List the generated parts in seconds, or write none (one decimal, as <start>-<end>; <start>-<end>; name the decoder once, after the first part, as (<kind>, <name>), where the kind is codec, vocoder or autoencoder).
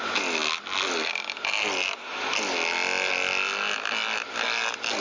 none